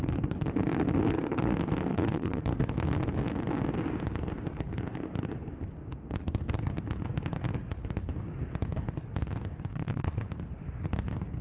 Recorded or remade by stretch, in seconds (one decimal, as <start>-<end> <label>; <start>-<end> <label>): 0.0-1.9 recorded; 1.9-2.4 remade; 2.4-9.7 recorded; 9.7-10.2 remade; 10.2-11.4 recorded